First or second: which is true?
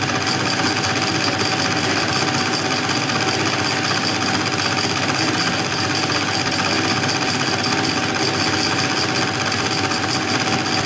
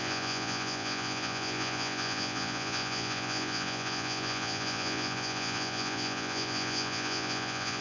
first